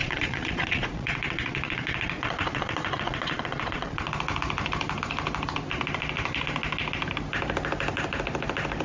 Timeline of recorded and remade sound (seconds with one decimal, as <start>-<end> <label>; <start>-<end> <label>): 0.0-4.1 remade; 4.1-8.8 recorded